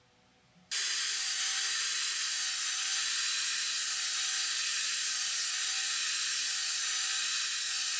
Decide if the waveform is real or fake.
real